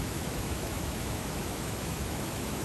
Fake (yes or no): yes